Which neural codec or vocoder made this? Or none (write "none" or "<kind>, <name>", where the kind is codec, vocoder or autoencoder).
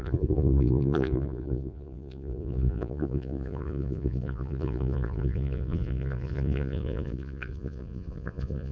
vocoder, Vocos